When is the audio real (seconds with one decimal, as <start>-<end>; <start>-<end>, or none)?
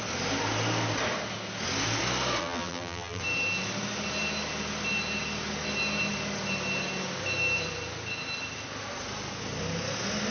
0.0-2.4; 3.2-10.3